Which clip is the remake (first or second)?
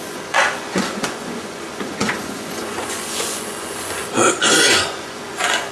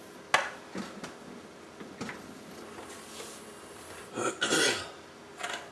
first